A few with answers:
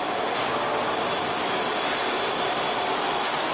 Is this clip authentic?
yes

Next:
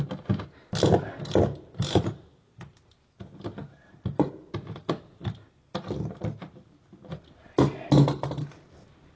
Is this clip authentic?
yes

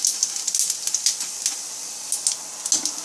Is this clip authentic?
yes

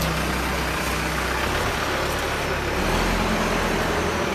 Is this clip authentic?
yes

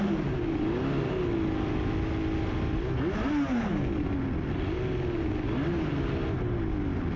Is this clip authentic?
yes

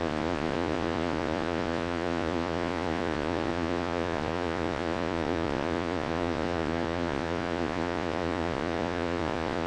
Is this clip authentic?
no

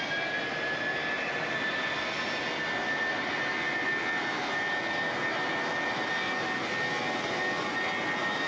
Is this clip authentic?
yes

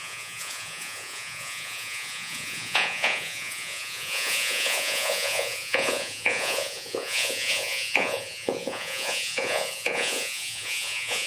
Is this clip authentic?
no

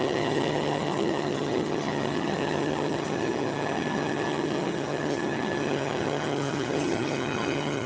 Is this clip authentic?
no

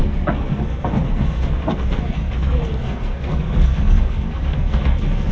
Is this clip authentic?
no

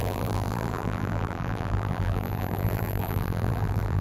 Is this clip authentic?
no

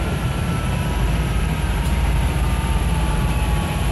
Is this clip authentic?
no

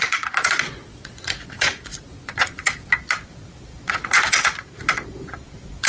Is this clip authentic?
no